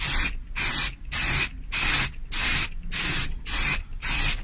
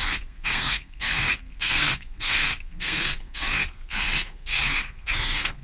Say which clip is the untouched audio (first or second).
first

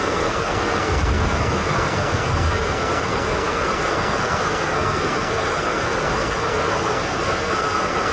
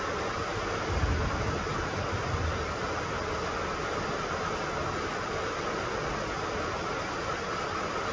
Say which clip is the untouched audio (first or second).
second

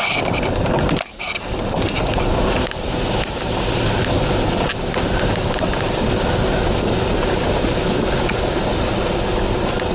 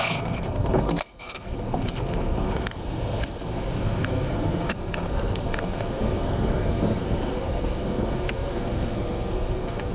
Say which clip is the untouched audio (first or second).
first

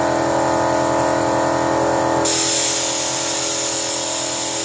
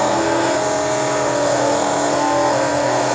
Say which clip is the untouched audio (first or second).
first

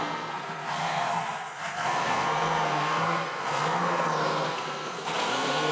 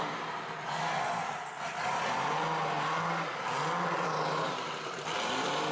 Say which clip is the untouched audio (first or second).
second